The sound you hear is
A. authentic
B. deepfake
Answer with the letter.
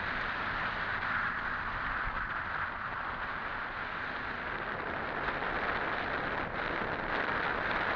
A